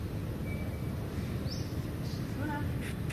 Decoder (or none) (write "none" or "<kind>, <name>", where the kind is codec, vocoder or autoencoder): none